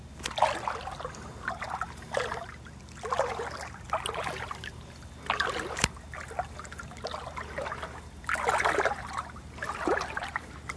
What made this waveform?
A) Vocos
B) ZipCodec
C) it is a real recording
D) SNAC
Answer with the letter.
C